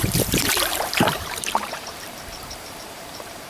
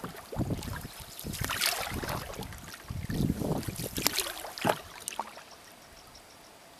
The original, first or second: second